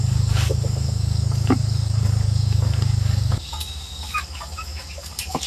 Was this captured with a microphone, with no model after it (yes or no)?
no